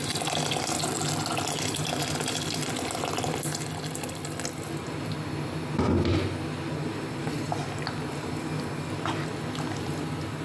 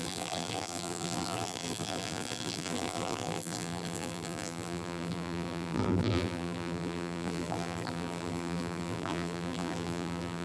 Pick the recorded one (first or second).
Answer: first